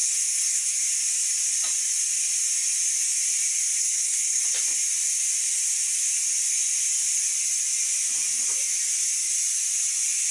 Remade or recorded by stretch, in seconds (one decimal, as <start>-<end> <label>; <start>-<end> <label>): 0.0-0.8 remade; 0.8-3.8 recorded; 3.8-4.4 remade; 4.4-10.3 recorded